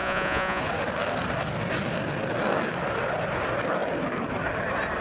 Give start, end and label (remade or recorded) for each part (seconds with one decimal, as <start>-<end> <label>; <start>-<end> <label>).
0.0-0.6 remade; 0.6-5.0 recorded